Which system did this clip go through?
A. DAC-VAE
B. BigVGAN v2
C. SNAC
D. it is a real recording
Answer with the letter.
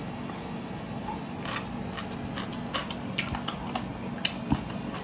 D